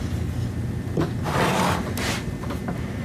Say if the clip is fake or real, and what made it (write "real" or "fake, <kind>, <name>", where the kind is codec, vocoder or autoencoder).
real